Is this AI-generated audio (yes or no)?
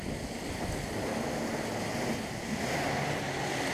no